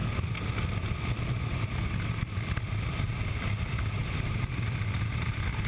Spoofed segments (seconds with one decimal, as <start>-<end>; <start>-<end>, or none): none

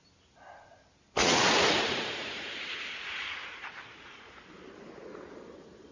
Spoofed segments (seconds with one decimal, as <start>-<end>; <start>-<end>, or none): 1.2-4.4

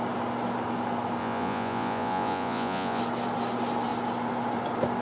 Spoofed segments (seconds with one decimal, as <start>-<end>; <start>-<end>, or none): 1.2-3.0

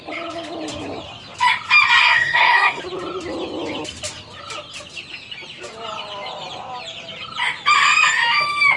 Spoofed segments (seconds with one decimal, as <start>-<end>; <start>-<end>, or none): 2.0-2.8

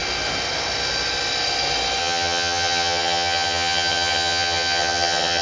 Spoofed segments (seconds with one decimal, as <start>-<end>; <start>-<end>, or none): 2.0-5.4

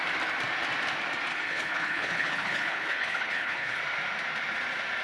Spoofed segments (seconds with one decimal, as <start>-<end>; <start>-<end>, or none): 1.3-3.8